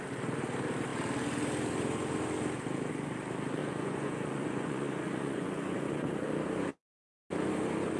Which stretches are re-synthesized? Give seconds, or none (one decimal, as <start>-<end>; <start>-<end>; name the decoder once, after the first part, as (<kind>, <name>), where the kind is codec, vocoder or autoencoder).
3.6-6.3 (vocoder, Vocos)